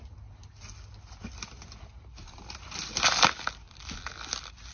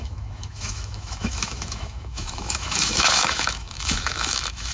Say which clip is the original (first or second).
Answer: first